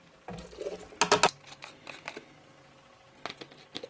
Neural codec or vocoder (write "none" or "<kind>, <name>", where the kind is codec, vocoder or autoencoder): none